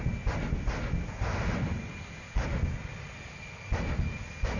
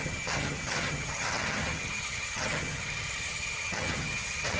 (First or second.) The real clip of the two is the first